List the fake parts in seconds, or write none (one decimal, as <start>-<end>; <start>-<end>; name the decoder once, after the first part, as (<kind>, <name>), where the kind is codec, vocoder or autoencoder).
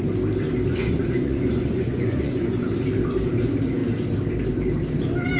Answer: 0.7-2.7 (vocoder, Vocos)